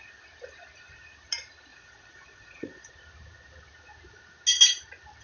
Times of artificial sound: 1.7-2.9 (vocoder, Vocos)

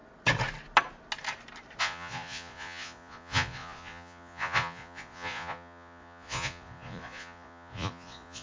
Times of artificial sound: 1.8-8.4 (vocoder, Vocos)

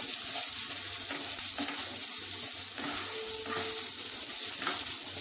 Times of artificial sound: none

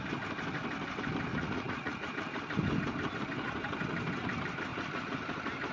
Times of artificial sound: 1.3-2.1 (vocoder, Vocos)

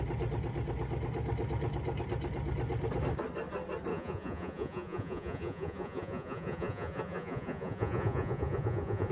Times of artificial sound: 3.9-9.1 (vocoder, Vocos)